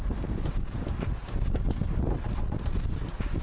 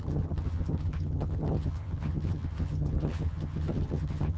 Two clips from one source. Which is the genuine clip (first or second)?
first